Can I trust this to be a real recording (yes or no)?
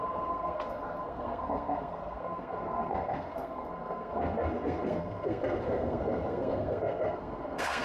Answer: no